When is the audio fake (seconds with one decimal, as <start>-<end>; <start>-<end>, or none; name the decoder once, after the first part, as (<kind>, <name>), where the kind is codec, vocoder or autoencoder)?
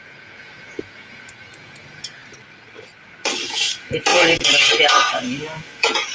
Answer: 0.0-2.2 (vocoder, Vocos); 3.5-6.1